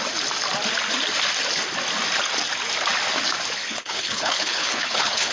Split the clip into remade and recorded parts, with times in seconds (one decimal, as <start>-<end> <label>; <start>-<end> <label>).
0.0-3.6 recorded; 3.6-5.3 remade